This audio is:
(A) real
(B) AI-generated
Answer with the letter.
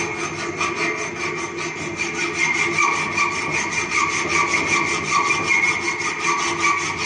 A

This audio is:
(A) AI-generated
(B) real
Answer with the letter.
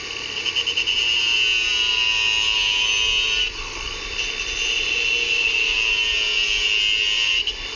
B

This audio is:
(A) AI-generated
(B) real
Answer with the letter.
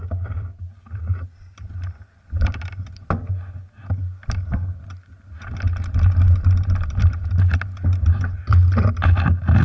B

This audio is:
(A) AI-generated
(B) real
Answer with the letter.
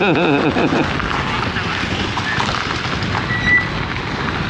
B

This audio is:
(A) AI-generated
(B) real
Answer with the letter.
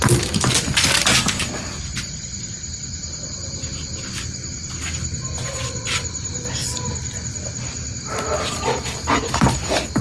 B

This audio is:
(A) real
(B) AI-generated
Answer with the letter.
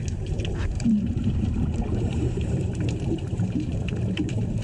B